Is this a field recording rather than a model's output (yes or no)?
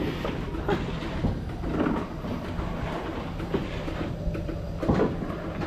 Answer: no